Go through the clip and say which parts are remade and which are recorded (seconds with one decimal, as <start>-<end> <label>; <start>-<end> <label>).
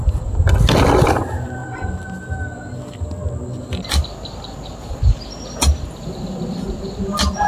0.0-7.5 recorded